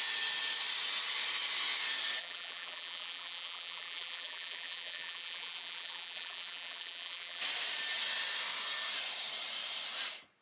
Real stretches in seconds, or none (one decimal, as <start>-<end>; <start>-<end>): 0.0-2.2; 7.4-10.4